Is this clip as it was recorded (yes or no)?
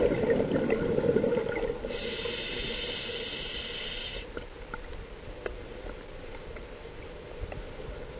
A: yes